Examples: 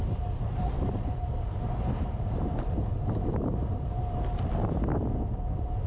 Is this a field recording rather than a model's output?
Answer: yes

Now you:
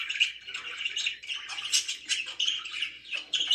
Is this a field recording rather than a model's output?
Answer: yes